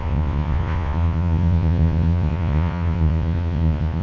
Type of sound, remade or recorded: remade